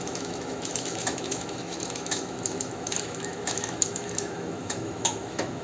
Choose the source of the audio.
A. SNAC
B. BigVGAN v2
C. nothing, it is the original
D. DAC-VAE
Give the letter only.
D